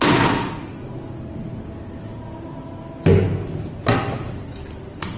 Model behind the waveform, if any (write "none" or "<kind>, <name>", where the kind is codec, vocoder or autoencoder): none